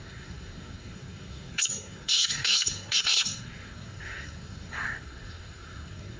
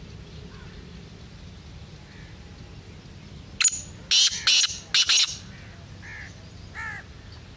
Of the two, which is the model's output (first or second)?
first